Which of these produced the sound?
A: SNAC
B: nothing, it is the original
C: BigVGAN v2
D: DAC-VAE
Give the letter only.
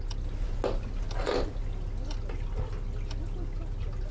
B